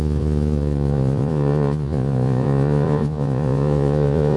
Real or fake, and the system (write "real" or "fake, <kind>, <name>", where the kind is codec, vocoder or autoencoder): fake, vocoder, Vocos